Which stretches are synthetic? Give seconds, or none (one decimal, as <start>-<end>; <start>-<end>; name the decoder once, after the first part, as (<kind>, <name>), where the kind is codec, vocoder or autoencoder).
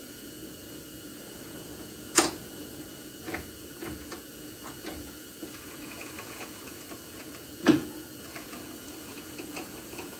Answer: 0.0-10.2 (vocoder, Vocos)